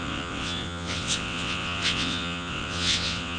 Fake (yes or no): yes